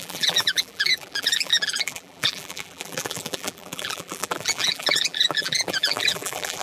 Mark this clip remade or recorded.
remade